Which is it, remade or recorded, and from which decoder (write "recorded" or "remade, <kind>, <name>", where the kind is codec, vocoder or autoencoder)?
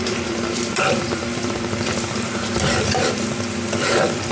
remade, vocoder, BigVGAN v2